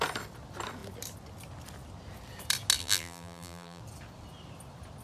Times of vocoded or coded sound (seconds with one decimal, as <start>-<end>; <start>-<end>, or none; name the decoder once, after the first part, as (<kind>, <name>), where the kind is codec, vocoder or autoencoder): 2.8-3.8 (vocoder, BigVGAN v2)